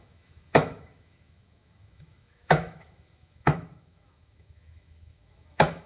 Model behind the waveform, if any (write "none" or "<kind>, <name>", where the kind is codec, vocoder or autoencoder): autoencoder, DAC-VAE